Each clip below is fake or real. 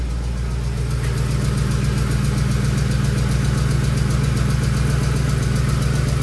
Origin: real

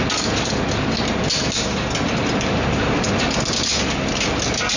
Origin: real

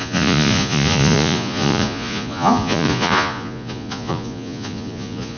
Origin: fake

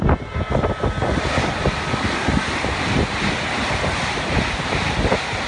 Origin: real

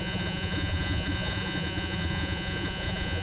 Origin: fake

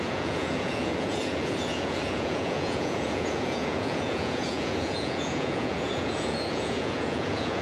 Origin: fake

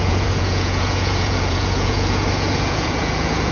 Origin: fake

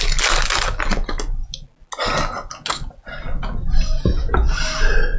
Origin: real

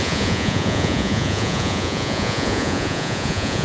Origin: fake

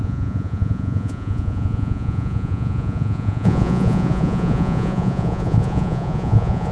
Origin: fake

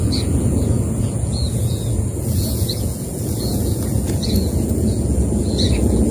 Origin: fake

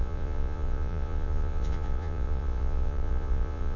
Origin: fake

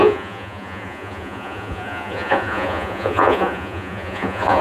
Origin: fake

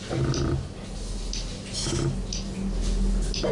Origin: real